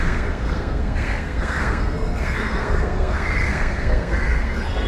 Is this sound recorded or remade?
remade